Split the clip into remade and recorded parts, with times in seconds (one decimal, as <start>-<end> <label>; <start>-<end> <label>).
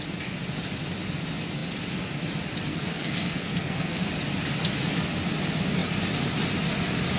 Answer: 0.0-2.7 recorded; 2.7-4.1 remade; 4.1-7.2 recorded